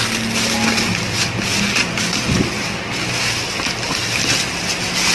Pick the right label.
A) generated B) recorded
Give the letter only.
B